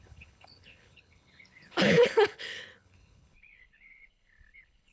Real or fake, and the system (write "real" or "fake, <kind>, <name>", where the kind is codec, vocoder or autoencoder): fake, codec, HILCodec